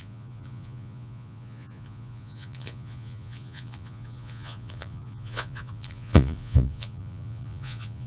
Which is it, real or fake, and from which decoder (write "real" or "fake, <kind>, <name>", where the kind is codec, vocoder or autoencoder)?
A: fake, vocoder, Vocos